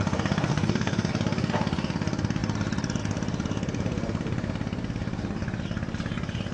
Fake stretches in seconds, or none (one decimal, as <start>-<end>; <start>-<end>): 0.5-1.1